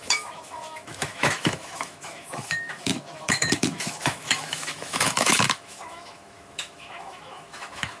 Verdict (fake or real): fake